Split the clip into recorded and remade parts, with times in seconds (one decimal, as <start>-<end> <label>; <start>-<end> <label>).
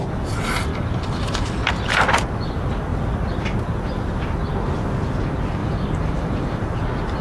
0.0-0.7 recorded; 0.7-1.7 remade; 1.7-5.6 recorded; 5.6-6.7 remade; 6.7-7.2 recorded